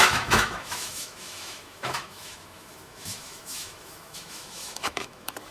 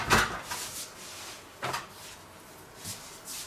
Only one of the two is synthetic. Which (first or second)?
first